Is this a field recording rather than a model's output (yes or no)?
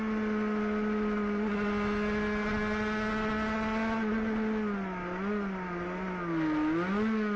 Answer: yes